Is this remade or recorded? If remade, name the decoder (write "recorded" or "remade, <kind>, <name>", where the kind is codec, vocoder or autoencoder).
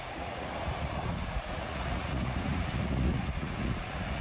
remade, vocoder, Vocos